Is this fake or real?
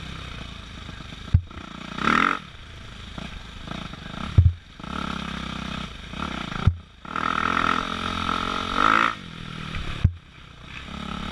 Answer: real